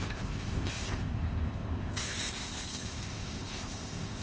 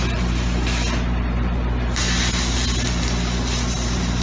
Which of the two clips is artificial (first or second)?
first